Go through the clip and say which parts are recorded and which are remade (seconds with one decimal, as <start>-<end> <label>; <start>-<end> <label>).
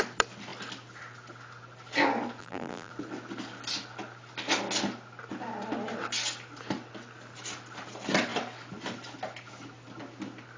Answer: 0.0-2.4 recorded; 2.4-2.9 remade; 2.9-10.6 recorded